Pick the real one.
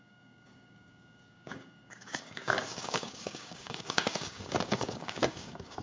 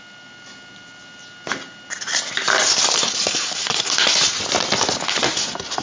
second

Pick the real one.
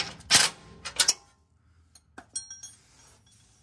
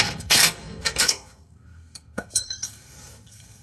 first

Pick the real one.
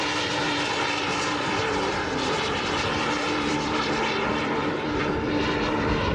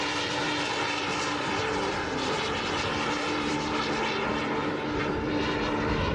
second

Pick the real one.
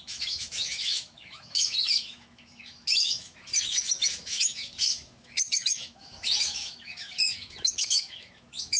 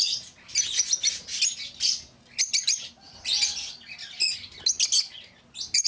second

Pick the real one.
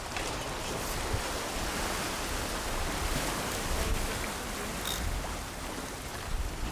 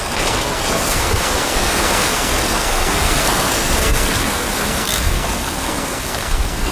first